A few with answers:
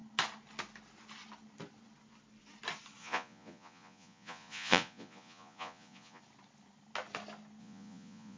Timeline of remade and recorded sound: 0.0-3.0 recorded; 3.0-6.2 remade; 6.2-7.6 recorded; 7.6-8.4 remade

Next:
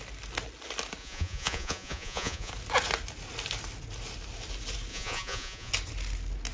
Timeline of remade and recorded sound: 0.0-1.0 recorded; 1.0-2.5 remade; 2.5-4.9 recorded; 4.9-5.7 remade; 5.7-6.5 recorded

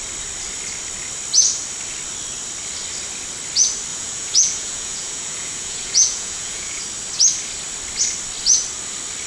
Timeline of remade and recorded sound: 0.0-3.9 recorded; 3.9-6.8 remade; 6.8-9.3 recorded

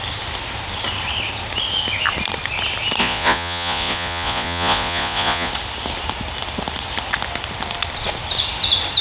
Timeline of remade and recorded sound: 0.0-3.0 recorded; 3.0-5.5 remade; 5.5-9.0 recorded

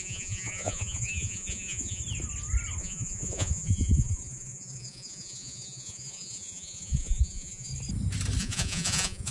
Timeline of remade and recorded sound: 0.0-2.0 remade; 2.0-2.8 recorded; 2.8-7.7 remade; 7.7-8.4 recorded; 8.4-9.3 remade